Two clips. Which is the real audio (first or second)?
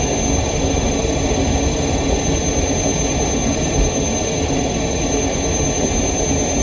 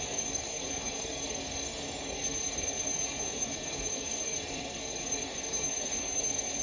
first